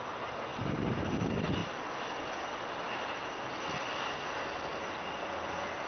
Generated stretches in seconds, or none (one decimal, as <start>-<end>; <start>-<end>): none